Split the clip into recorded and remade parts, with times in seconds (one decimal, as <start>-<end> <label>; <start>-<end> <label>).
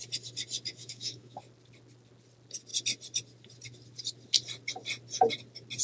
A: 0.0-0.8 recorded; 0.8-1.4 remade; 1.4-5.8 recorded